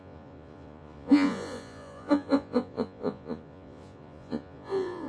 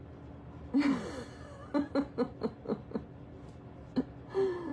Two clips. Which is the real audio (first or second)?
second